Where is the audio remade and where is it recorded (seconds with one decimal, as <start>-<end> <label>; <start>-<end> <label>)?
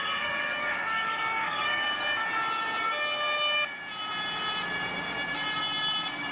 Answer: 0.0-2.2 remade; 2.2-6.3 recorded